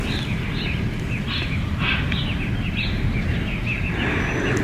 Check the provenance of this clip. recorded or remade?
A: recorded